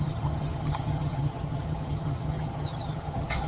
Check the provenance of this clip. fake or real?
fake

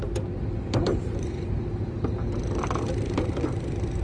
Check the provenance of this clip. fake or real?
fake